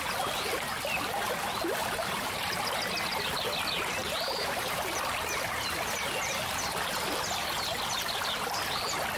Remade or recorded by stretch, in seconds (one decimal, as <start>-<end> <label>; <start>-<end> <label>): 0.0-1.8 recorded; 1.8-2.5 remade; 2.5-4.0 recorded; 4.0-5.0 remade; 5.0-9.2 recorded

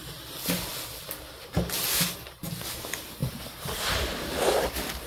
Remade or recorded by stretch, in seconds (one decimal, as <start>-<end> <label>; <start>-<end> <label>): 0.0-0.7 recorded; 0.7-1.5 remade; 1.5-5.1 recorded

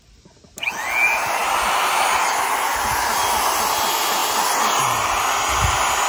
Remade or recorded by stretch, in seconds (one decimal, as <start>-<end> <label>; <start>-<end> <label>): 0.0-6.1 recorded

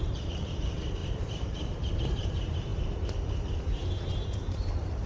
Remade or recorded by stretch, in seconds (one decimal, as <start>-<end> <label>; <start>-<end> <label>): 0.0-5.1 remade

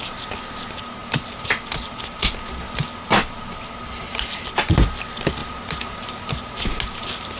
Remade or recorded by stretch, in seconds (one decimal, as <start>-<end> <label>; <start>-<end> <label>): 0.0-7.4 recorded

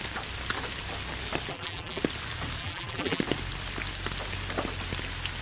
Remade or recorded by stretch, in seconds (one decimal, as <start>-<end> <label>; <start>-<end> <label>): 0.0-1.5 recorded; 1.5-2.0 remade; 2.0-2.6 recorded; 2.6-3.2 remade; 3.2-5.4 recorded